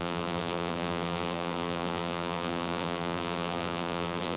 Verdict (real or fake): fake